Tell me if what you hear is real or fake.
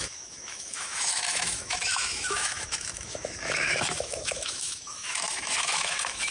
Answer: fake